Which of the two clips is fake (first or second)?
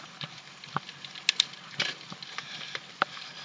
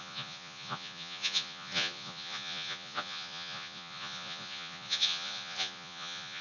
second